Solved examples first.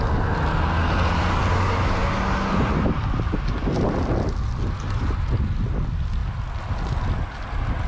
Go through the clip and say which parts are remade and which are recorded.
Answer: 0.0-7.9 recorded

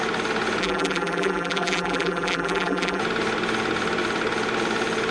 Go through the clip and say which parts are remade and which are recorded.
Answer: 0.0-0.6 recorded; 0.6-3.0 remade; 3.0-5.1 recorded

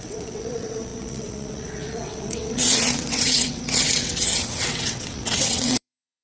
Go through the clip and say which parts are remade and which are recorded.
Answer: 0.0-6.2 remade

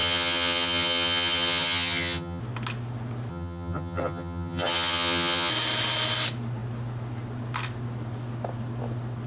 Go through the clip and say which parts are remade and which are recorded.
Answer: 0.0-2.4 remade; 2.4-3.3 recorded; 3.3-5.5 remade; 5.5-9.3 recorded

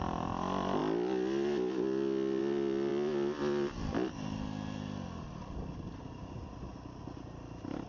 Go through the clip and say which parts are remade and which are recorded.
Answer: 0.0-7.9 recorded

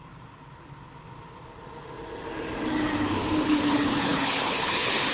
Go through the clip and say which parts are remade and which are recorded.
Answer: 0.0-3.1 recorded; 3.1-5.1 remade

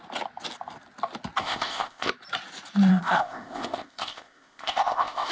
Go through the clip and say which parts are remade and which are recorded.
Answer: 0.0-1.4 recorded; 1.4-2.1 remade; 2.1-2.9 recorded; 2.9-5.3 remade

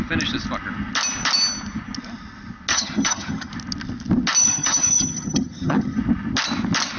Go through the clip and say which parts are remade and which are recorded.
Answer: 0.0-2.7 recorded; 2.7-3.5 remade; 3.5-4.4 recorded; 4.4-6.0 remade; 6.0-7.0 recorded